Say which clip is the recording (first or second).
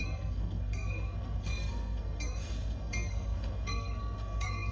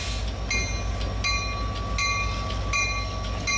second